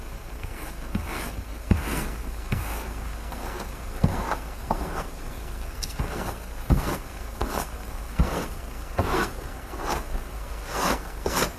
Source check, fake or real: fake